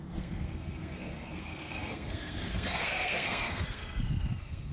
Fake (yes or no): yes